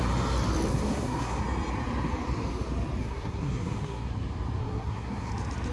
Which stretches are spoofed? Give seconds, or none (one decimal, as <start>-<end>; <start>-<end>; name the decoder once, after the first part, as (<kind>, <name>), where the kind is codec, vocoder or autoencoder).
0.7-1.4 (codec, SNAC); 3.0-4.1; 4.6-5.3